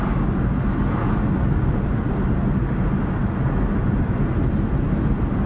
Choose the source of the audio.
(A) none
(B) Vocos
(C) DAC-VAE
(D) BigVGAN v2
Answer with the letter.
A